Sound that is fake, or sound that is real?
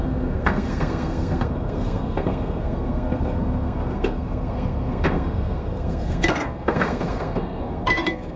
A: fake